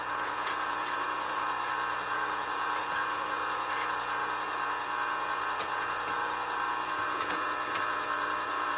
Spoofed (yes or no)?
yes